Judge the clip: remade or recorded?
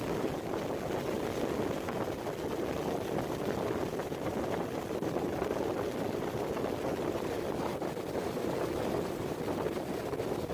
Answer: recorded